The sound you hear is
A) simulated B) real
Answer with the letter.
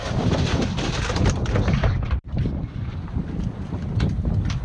B